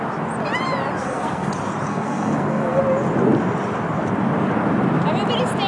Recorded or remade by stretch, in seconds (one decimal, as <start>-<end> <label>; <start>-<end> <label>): 0.0-1.0 recorded; 1.0-1.5 remade; 1.5-1.9 recorded; 1.9-2.8 remade; 2.8-5.7 recorded